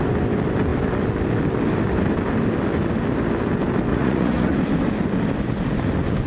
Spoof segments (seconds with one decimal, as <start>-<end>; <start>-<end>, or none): 3.9-4.5